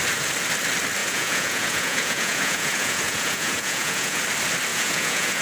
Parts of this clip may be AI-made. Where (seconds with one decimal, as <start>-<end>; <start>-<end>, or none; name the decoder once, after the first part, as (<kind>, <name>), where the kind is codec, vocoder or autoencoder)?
1.0-4.2 (vocoder, Vocos); 4.7-5.4